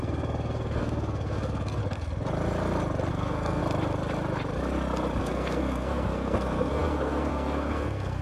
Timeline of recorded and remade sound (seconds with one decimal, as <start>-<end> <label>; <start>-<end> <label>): 0.0-1.8 remade; 1.8-3.1 recorded; 3.1-3.6 remade; 3.6-5.2 recorded; 5.2-8.2 remade